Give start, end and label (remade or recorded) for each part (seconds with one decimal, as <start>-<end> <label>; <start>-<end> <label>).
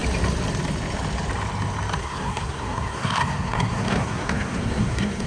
0.0-2.0 recorded; 2.0-5.3 remade